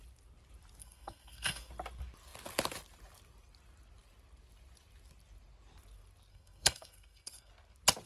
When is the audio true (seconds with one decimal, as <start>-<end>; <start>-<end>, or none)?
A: 0.0-0.8; 1.7-6.3; 7.5-8.1